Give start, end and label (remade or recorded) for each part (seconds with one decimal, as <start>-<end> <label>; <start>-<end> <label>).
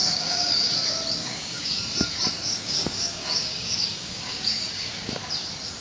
0.0-0.7 remade; 0.7-1.2 recorded; 1.2-1.8 remade; 1.8-2.5 recorded; 2.5-5.1 remade; 5.1-5.8 recorded